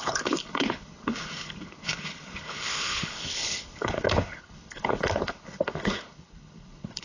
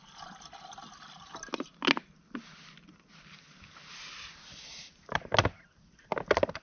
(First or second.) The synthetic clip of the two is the first